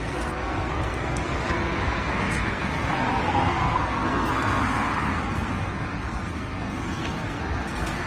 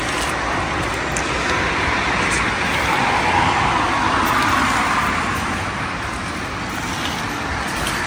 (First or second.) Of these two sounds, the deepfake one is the first